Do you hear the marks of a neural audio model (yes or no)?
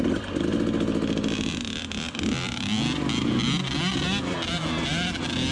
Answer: no